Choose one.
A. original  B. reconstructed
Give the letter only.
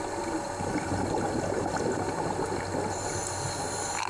A